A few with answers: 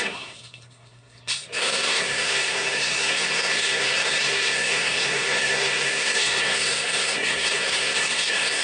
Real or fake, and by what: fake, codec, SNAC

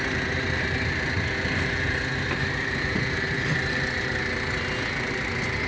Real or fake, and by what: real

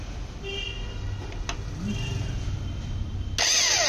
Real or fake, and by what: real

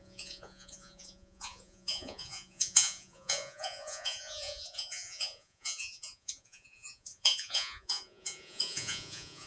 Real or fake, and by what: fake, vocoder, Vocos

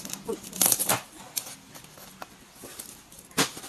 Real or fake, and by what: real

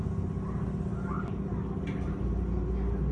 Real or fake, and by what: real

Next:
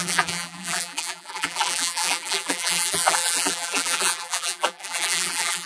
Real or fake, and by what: fake, vocoder, BigVGAN v2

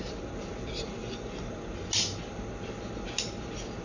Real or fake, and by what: real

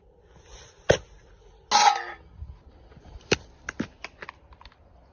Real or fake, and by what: real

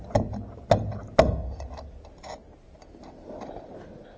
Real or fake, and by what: real